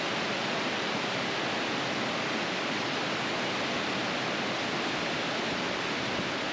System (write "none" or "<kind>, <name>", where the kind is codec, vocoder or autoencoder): none